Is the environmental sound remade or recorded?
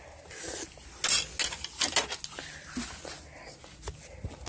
recorded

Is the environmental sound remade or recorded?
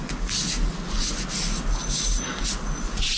recorded